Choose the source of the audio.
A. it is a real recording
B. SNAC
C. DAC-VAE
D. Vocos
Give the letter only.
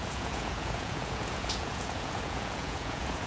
D